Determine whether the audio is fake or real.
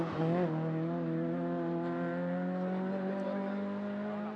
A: real